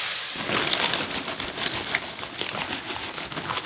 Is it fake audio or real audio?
real